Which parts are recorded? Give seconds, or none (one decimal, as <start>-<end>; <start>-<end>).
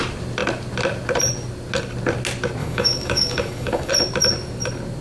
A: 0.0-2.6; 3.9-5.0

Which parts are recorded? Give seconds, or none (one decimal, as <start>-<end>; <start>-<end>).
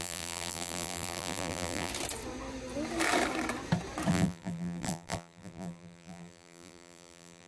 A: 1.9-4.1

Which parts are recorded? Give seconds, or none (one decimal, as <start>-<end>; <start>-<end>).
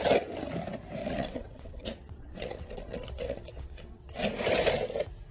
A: 0.0-1.0; 4.2-5.3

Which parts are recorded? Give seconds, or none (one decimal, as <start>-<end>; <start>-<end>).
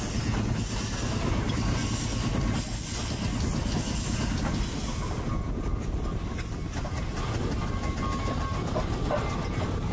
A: 0.0-9.9